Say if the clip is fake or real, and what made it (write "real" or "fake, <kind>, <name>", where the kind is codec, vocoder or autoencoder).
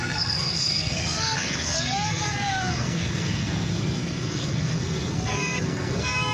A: fake, codec, SNAC